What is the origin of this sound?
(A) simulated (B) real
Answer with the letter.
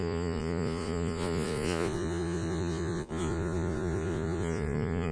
A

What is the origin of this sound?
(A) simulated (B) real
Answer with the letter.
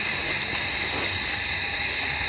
B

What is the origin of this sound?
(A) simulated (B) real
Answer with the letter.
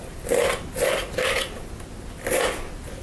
B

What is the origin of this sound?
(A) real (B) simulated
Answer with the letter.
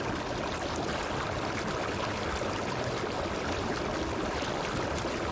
A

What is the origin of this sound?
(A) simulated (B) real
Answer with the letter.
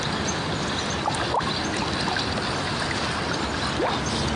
B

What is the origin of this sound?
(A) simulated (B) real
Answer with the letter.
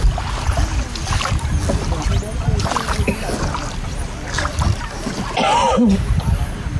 B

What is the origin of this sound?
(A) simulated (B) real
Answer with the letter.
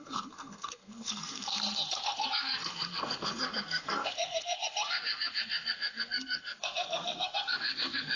A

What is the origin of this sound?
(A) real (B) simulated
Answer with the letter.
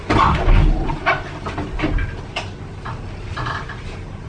B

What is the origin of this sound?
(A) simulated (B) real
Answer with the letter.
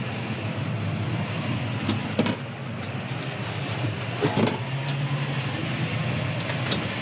B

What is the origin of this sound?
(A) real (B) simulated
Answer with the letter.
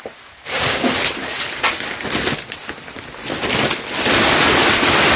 A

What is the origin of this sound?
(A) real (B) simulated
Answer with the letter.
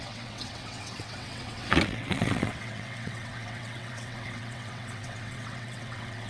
B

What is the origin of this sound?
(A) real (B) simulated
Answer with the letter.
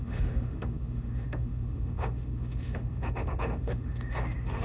B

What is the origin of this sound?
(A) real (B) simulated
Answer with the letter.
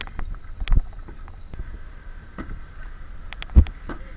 A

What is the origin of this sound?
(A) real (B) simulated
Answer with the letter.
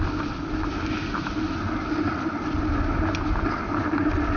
A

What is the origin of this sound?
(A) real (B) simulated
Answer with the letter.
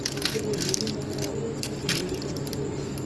B